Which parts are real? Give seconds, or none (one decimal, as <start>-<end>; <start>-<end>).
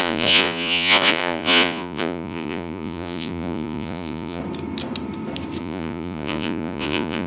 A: 4.4-5.6